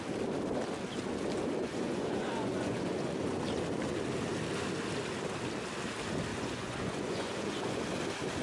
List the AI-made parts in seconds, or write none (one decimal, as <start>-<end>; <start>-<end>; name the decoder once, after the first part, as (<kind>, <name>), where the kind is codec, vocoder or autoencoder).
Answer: 1.6-3.4 (vocoder, Vocos); 6.3-7.8

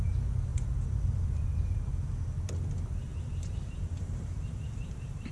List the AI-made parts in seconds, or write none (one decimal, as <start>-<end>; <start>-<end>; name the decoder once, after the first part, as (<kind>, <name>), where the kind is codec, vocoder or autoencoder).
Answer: 0.5-2.5 (vocoder, BigVGAN v2); 3.1-5.3

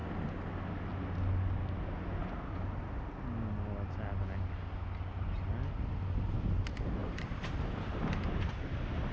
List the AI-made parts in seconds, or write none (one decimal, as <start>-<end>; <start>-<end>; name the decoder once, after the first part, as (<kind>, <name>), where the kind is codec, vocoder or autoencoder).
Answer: 7.0-8.0 (vocoder, BigVGAN v2)

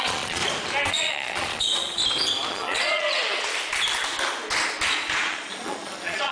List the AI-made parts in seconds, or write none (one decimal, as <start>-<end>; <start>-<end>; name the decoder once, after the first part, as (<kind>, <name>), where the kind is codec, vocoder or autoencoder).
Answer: 0.0-0.4 (vocoder, Vocos); 0.9-2.0; 2.5-3.5; 4.9-6.3

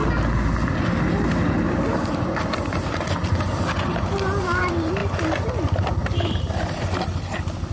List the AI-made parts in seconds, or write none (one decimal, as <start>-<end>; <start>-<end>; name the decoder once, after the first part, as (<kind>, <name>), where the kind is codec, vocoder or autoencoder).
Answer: none